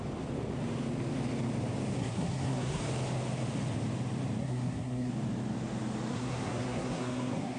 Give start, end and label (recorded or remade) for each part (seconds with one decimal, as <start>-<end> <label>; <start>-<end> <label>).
0.0-2.0 recorded; 2.0-2.8 remade; 2.8-4.4 recorded; 4.4-5.1 remade; 5.1-6.1 recorded; 6.1-7.6 remade